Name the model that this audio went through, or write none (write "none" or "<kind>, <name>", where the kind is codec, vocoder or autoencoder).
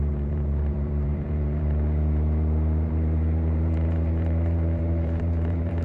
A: vocoder, BigVGAN v2